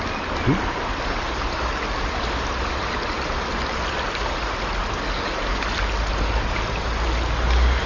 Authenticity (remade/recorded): recorded